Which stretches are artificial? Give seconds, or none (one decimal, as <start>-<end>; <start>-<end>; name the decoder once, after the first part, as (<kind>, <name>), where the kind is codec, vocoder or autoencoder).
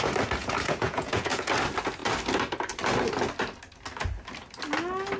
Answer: 0.4-1.5 (vocoder, Vocos)